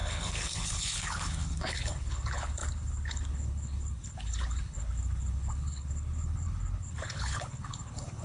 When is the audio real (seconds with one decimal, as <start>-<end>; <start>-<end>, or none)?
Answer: none